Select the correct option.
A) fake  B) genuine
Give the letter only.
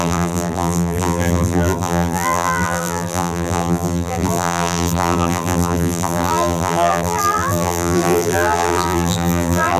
A